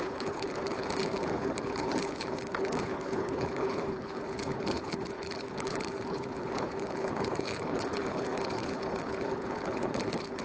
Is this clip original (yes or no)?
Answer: no